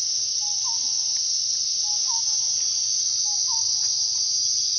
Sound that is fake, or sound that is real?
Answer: real